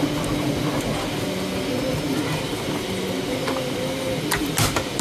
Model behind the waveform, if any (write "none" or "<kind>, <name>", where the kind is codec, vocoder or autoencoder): none